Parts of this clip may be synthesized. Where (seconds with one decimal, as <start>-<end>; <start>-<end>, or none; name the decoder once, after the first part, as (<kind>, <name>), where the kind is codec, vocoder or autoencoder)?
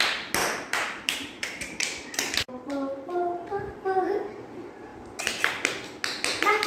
0.4-4.0 (vocoder, BigVGAN v2)